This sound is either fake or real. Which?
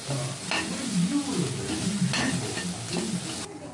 real